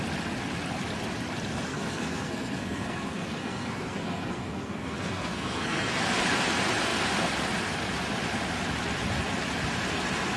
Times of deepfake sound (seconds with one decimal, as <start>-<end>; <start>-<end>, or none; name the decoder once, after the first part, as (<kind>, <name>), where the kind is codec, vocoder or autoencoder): 1.7-6.0 (codec, SNAC)